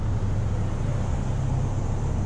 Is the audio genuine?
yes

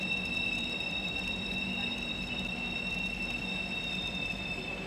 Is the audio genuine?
no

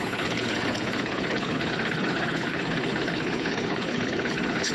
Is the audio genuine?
no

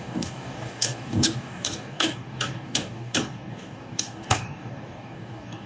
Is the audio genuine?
no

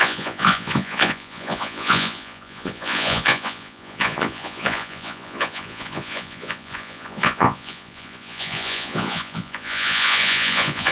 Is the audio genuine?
no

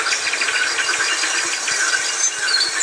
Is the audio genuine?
yes